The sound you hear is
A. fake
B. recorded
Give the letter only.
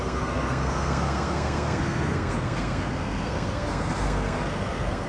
A